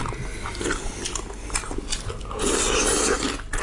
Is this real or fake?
real